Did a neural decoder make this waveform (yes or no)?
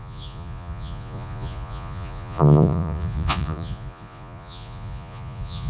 yes